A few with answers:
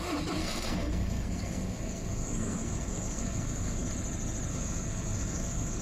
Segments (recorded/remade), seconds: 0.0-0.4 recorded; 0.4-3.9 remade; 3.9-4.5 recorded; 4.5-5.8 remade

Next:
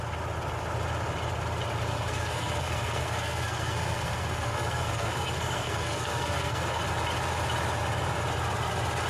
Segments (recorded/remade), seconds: 0.0-1.9 recorded; 1.9-6.8 remade; 6.8-9.1 recorded

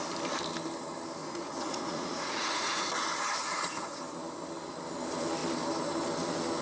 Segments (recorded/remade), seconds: 0.0-1.2 recorded; 1.2-2.9 remade; 2.9-3.4 recorded; 3.4-4.0 remade; 4.0-6.6 recorded

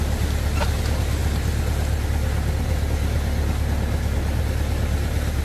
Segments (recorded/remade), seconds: 0.0-5.4 recorded

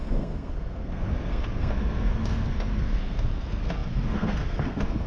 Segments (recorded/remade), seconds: 0.0-5.1 remade

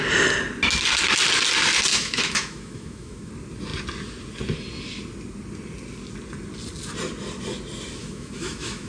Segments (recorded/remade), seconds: 0.0-1.9 recorded; 1.9-3.3 remade; 3.3-8.0 recorded; 8.0-8.9 remade

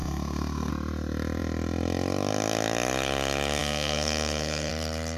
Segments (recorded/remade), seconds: 0.0-0.7 remade; 0.7-3.6 recorded; 3.6-4.7 remade; 4.7-5.2 recorded

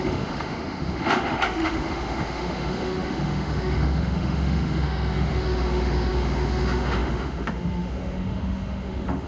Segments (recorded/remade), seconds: 0.0-9.3 remade